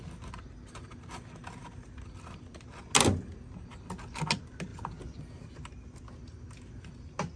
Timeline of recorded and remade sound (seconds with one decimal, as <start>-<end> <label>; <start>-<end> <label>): 0.0-1.6 recorded; 1.6-2.5 remade; 2.5-4.7 recorded; 4.7-5.2 remade; 5.2-7.4 recorded